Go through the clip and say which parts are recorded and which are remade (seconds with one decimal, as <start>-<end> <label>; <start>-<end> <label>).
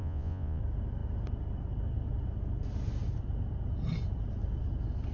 0.0-0.6 remade; 0.6-5.1 recorded